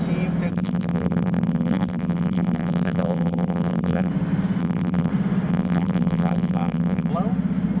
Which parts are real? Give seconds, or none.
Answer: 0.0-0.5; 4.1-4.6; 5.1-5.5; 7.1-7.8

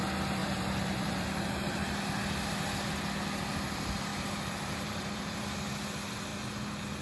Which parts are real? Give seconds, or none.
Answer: 0.0-0.4; 1.9-4.1; 5.4-6.3

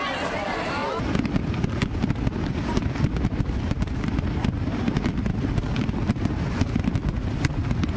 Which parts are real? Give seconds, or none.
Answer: 0.0-8.0

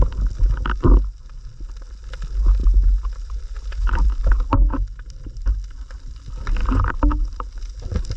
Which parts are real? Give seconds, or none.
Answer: 0.0-2.6; 4.0-8.2

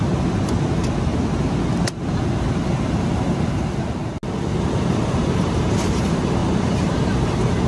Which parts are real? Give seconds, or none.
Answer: 1.1-4.7

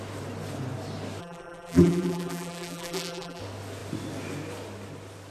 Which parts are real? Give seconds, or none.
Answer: 0.0-1.2; 3.4-5.3

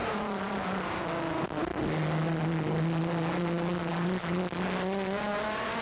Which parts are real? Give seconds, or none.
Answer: 1.0-3.8; 4.4-5.8